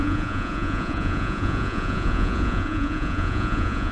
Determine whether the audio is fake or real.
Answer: fake